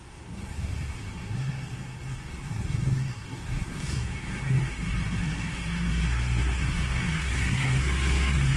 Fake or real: fake